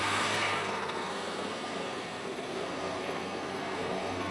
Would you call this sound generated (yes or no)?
yes